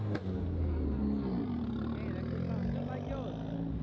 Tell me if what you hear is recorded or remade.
recorded